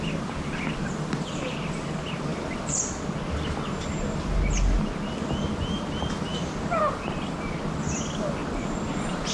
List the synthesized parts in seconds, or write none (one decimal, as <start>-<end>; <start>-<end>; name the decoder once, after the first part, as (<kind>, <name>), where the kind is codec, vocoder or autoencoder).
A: 2.3-2.9 (vocoder, BigVGAN v2); 8.4-9.3